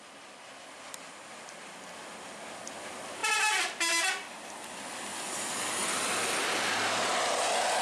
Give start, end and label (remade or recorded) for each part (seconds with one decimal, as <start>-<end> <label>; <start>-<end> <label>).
0.0-7.8 recorded